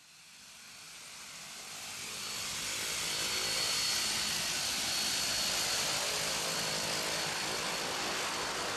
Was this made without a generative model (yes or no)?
yes